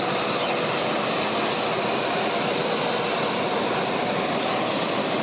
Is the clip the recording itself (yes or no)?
yes